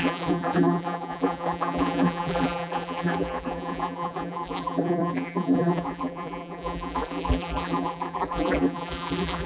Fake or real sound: fake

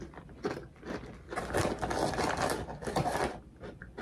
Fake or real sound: real